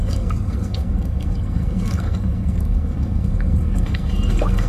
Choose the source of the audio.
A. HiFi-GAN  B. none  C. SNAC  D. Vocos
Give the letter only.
C